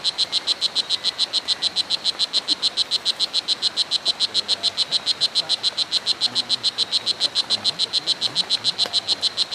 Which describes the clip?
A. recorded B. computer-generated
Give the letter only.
A